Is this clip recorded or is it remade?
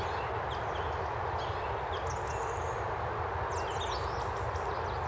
recorded